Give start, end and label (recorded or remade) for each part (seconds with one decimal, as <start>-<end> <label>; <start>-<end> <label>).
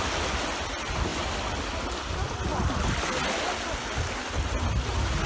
0.0-5.3 recorded